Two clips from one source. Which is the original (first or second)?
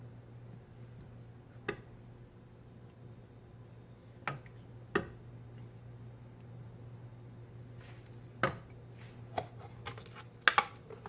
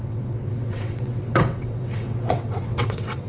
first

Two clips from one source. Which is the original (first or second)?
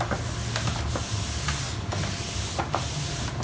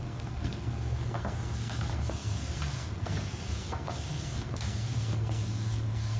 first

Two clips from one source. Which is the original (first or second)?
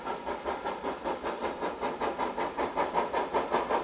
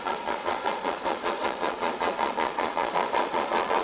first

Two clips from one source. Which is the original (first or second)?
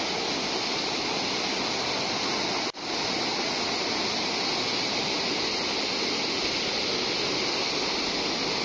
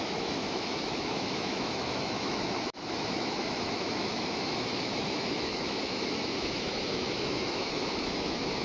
first